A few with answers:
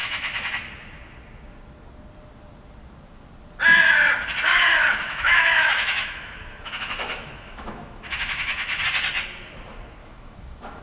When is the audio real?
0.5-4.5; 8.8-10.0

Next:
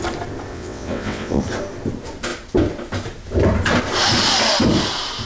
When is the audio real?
0.0-0.5; 1.4-5.3

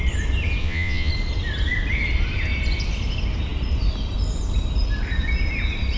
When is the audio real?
0.0-0.6; 1.1-6.0

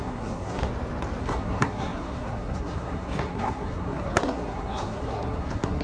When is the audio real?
0.7-1.2